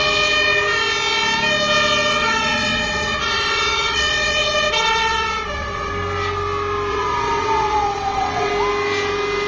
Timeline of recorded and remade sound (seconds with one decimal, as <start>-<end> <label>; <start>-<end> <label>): 0.0-2.1 recorded; 2.1-5.9 remade; 5.9-6.9 recorded; 6.9-8.5 remade; 8.5-9.5 recorded